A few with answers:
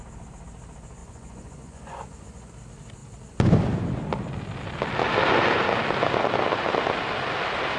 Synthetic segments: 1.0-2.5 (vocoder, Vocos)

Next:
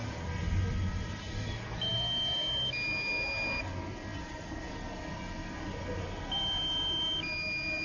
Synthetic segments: none

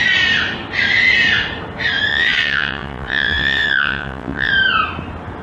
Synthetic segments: 2.1-4.5 (vocoder, WaveNeXt)

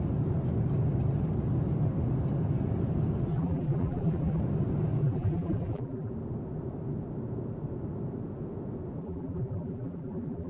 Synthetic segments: 3.3-4.4 (vocoder, BigVGAN v2); 5.0-6.1; 9.0-10.5

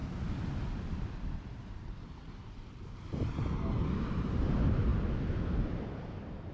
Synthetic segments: none

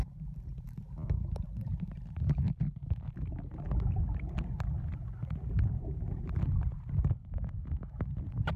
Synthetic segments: 7.2-8.2 (autoencoder, DAC-VAE)

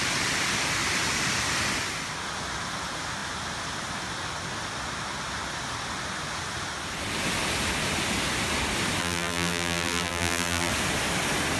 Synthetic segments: 9.0-10.7 (vocoder, BigVGAN v2)